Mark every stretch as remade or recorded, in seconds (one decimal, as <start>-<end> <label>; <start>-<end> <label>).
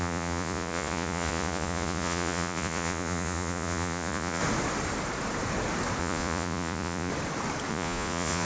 0.0-4.4 remade; 4.4-6.0 recorded; 6.0-7.1 remade; 7.1-7.7 recorded; 7.7-8.5 remade